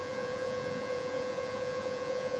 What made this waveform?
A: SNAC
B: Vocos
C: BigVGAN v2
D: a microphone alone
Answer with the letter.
B